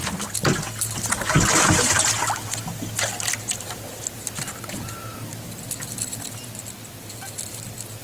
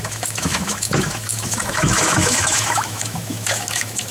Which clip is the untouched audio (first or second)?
first